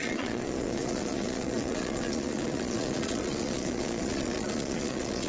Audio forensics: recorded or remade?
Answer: remade